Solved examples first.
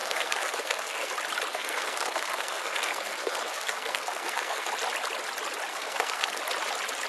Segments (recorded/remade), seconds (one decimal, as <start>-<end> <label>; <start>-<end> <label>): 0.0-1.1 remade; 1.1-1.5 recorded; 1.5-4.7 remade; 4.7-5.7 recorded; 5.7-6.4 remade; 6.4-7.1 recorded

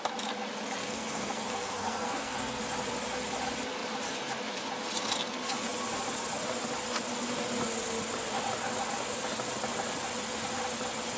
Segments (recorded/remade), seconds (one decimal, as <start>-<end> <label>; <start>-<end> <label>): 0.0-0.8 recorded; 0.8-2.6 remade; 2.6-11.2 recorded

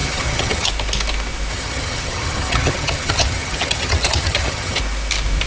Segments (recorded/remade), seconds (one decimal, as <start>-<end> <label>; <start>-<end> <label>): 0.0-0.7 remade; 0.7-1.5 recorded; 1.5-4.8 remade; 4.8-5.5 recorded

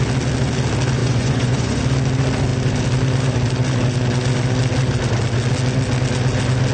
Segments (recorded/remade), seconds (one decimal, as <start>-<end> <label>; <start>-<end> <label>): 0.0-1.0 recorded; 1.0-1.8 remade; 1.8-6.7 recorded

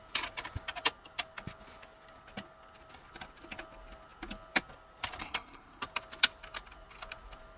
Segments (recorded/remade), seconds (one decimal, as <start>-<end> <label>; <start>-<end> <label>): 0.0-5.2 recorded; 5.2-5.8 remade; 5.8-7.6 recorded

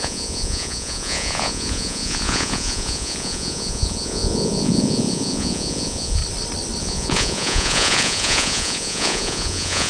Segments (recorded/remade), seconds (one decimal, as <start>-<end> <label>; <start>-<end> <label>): 0.0-6.2 remade; 6.2-6.8 recorded; 6.8-9.9 remade

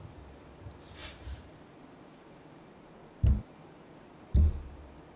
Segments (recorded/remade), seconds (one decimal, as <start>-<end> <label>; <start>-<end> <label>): 0.0-1.0 recorded; 1.0-4.1 remade; 4.1-5.2 recorded